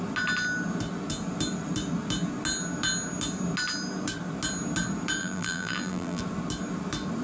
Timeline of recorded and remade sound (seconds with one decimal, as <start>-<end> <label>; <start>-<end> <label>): 0.0-5.2 recorded; 5.2-6.2 remade; 6.2-7.2 recorded